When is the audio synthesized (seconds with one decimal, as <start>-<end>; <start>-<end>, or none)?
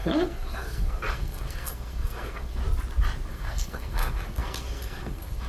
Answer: 0.0-2.6; 3.3-5.5